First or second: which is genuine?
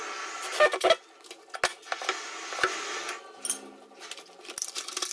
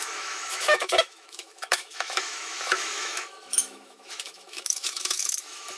first